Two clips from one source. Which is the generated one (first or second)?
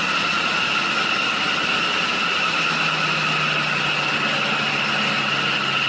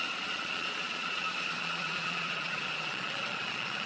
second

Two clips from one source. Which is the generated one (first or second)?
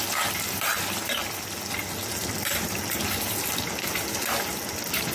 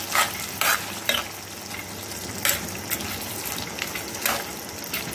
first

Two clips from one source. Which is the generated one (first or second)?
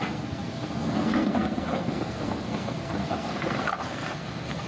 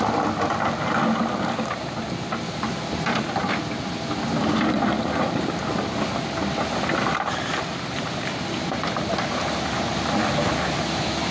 first